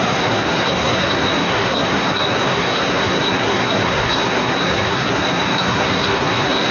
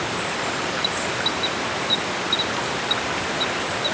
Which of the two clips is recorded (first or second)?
second